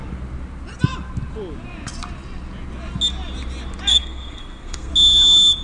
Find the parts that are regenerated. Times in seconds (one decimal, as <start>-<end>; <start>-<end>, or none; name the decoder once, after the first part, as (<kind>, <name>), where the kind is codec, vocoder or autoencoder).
3.9-4.9 (codec, SNAC)